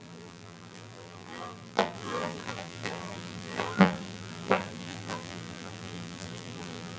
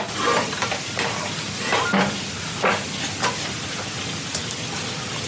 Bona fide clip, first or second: second